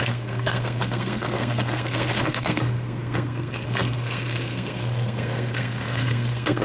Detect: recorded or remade remade